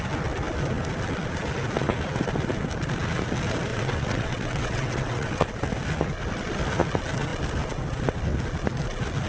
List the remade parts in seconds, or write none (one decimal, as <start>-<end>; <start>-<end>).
3.7-5.5